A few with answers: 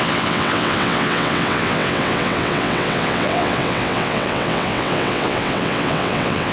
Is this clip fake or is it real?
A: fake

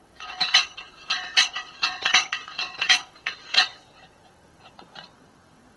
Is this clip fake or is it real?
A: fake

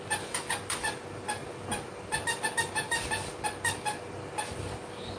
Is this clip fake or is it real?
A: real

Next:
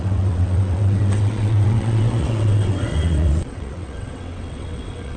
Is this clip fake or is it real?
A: fake